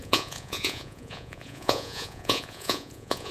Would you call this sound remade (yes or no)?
yes